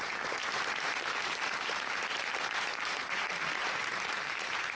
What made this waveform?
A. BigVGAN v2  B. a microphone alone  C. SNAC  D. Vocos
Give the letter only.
A